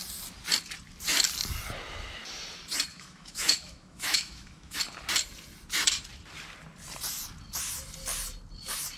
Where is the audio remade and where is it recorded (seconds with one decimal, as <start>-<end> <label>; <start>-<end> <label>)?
0.0-2.9 recorded; 2.9-4.8 remade; 4.8-9.0 recorded